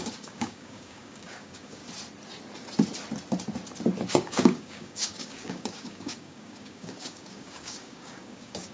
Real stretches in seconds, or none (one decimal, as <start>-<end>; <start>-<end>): 1.8-4.1